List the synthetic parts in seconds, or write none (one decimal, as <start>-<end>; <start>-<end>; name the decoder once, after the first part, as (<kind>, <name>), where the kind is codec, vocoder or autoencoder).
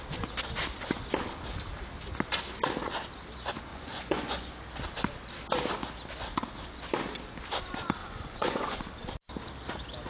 3.7-4.6 (vocoder, Vocos); 8.0-8.8